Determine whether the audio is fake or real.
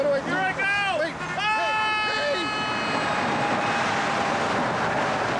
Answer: real